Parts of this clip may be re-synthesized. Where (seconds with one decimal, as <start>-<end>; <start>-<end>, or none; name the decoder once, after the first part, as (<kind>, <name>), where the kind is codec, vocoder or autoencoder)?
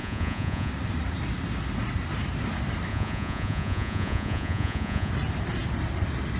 0.0-0.7 (vocoder, Vocos); 2.9-5.1